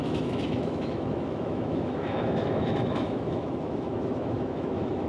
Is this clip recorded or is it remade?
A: remade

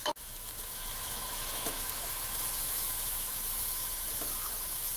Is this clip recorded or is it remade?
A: remade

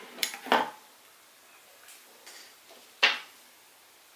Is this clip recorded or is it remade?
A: recorded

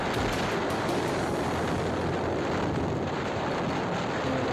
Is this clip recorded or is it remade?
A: recorded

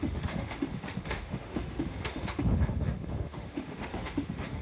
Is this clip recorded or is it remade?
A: remade